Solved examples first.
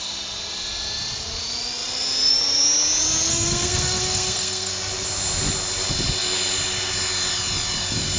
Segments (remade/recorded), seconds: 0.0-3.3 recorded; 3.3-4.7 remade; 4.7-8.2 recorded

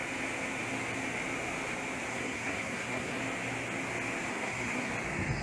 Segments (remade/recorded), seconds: 0.0-2.1 recorded; 2.1-3.2 remade; 3.2-4.3 recorded; 4.3-4.9 remade; 4.9-5.4 recorded

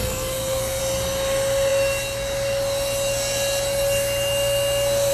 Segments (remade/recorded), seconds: 0.0-0.8 remade; 0.8-5.1 recorded

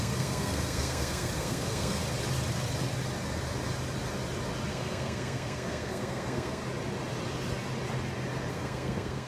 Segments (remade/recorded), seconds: 0.0-2.0 remade; 2.0-4.7 recorded; 4.7-6.6 remade; 6.6-8.5 recorded; 8.5-9.3 remade

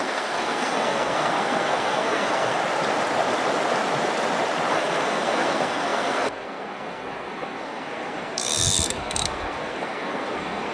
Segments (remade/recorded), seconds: 0.0-2.6 remade; 2.6-4.7 recorded; 4.7-10.7 remade

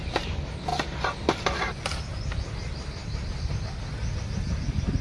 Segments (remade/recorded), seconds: 0.0-5.0 recorded

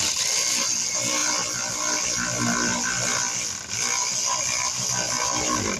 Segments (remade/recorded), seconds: 0.0-5.8 recorded

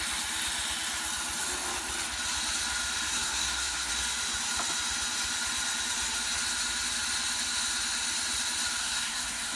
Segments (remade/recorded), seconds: 0.0-3.1 recorded; 3.1-3.9 remade; 3.9-8.8 recorded; 8.8-9.6 remade